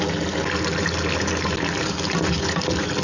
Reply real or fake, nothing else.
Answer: real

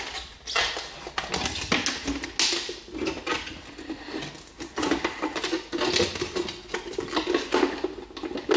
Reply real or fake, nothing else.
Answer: real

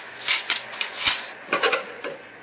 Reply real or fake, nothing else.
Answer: fake